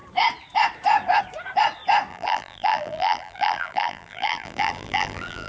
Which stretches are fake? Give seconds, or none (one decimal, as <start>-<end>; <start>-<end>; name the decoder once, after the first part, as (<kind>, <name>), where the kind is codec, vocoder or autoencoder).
2.1-5.5 (vocoder, BigVGAN v2)